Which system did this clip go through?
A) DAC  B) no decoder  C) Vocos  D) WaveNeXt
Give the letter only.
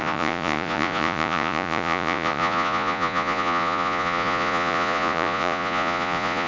C